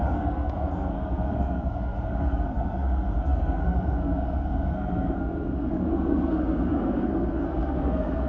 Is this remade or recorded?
remade